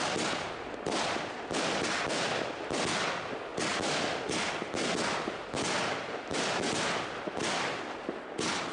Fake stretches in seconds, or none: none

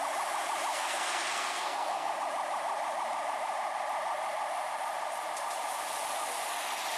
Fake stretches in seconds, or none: 0.7-2.1 (codec, SNAC)

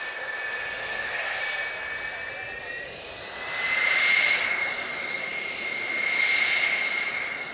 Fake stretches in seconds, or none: 0.8-1.4 (codec, SNAC)